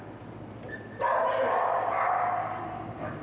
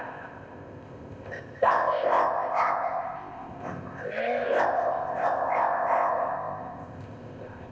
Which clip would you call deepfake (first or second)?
second